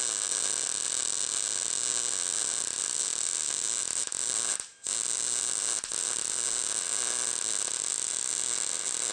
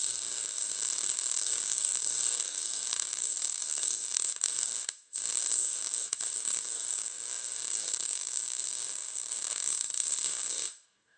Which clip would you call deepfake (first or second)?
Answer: second